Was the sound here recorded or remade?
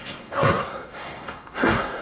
remade